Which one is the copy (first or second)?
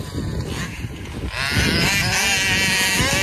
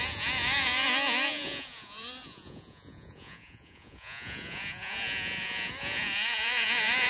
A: second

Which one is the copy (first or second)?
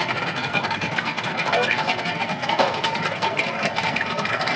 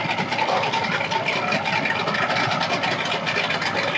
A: first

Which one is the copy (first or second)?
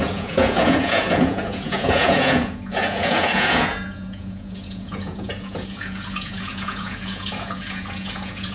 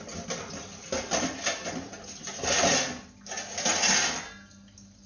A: first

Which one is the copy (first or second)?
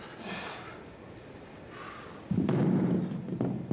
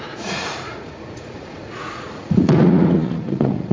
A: second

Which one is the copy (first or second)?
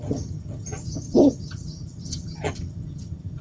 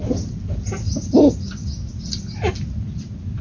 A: first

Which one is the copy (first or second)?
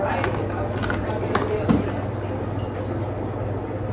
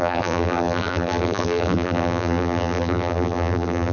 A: second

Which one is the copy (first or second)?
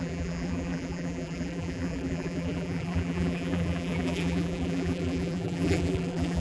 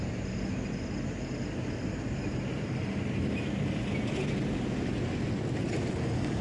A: first